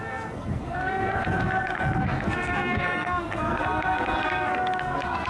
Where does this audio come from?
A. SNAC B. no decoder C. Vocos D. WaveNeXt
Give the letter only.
A